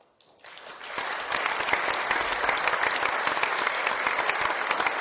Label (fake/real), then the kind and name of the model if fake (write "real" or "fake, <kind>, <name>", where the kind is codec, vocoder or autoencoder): real